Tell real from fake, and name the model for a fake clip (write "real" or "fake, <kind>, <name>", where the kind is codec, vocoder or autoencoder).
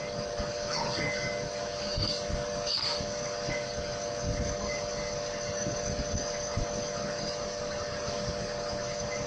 fake, codec, DAC